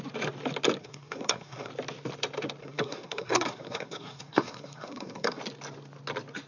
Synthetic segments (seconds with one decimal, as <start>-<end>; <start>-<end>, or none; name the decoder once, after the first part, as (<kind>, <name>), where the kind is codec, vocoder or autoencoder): 0.8-1.7 (codec, SNAC); 2.6-5.4